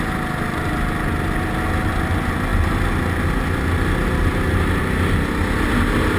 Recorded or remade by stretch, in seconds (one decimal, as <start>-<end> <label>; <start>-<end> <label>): 0.0-6.2 recorded